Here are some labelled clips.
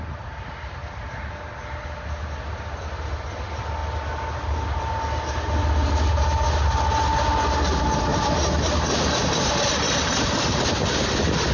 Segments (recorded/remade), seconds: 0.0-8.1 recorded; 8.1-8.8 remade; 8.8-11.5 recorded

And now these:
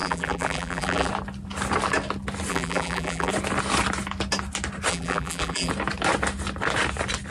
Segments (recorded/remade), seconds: 0.0-1.1 remade; 1.1-2.5 recorded; 2.5-3.3 remade; 3.3-4.9 recorded; 4.9-5.7 remade; 5.7-7.3 recorded

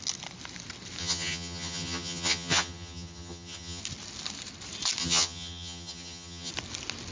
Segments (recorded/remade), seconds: 0.0-1.0 recorded; 1.0-3.8 remade; 3.8-5.0 recorded; 5.0-6.5 remade; 6.5-7.1 recorded